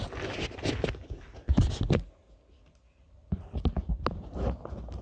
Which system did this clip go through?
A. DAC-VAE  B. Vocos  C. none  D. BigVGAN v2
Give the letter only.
C